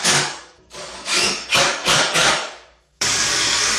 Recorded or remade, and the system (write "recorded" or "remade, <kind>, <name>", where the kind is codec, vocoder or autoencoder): remade, codec, DAC